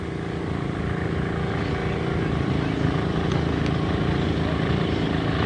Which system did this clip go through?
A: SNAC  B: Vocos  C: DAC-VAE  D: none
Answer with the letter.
D